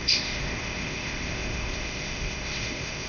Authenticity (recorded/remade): remade